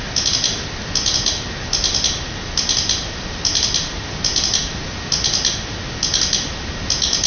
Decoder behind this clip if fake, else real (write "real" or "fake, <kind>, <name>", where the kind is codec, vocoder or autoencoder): real